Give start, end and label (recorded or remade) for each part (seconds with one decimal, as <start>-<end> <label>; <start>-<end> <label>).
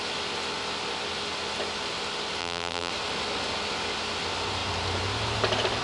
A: 0.0-2.4 recorded; 2.4-2.9 remade; 2.9-5.8 recorded